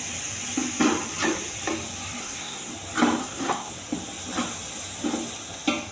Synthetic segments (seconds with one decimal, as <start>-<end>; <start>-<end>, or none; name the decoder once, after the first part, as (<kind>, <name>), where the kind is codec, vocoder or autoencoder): 2.2-2.7 (codec, SNAC); 3.2-3.7